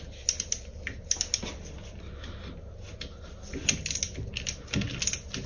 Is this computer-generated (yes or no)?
no